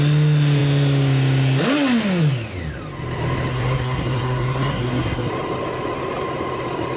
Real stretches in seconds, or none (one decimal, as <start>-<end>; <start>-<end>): 0.0-3.5; 5.3-7.0

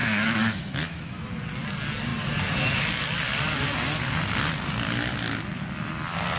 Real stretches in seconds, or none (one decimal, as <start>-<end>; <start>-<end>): 1.3-6.4

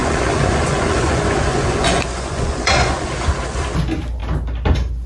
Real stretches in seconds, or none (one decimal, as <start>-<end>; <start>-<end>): 3.1-5.1

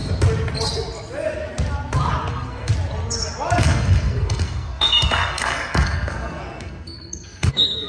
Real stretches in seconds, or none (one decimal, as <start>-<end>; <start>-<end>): 0.0-2.3; 2.7-3.6

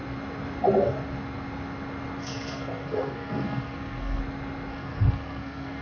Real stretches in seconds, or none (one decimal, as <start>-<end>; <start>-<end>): 0.0-2.2; 4.2-4.7

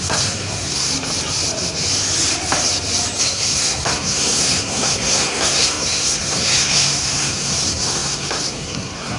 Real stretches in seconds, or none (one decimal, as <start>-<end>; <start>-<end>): 0.9-3.2

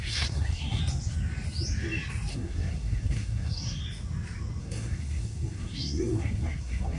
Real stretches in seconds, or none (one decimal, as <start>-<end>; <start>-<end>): 0.8-2.3; 3.8-4.6